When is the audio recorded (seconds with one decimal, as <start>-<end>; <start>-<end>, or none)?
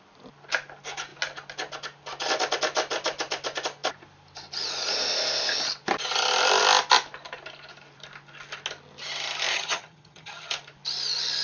0.0-9.5; 10.5-11.4